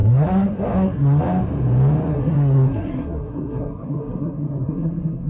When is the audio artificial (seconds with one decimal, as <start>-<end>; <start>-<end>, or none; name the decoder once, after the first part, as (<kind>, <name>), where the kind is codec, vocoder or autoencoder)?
0.0-1.2 (codec, SNAC); 2.1-5.3